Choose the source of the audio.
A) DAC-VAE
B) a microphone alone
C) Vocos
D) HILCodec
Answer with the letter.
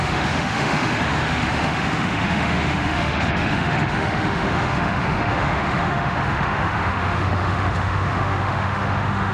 A